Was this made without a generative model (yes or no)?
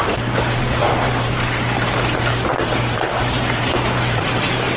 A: no